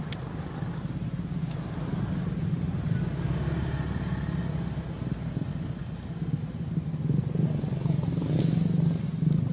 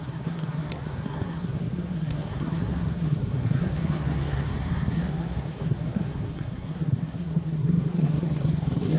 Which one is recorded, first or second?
first